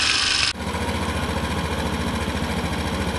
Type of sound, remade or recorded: recorded